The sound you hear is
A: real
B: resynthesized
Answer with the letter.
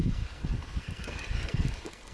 B